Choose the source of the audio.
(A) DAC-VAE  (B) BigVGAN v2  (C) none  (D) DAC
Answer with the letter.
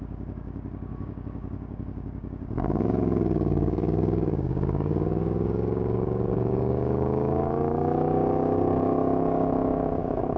D